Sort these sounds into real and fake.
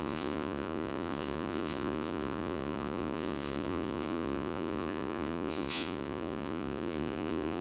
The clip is fake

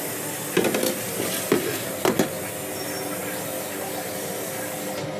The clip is real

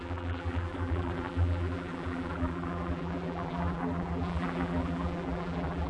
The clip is fake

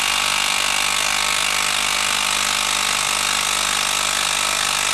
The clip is real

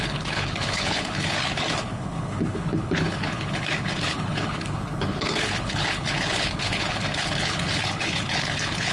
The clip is fake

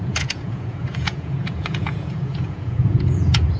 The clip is fake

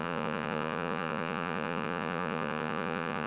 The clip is fake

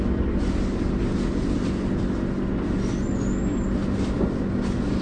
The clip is real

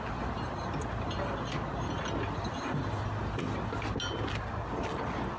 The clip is real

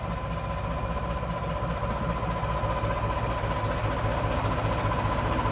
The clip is real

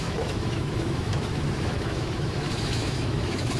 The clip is fake